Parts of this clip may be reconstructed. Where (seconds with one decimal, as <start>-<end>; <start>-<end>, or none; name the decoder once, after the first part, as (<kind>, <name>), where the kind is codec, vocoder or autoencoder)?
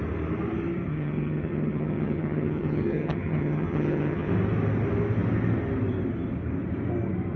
0.9-4.3 (vocoder, HiFi-GAN)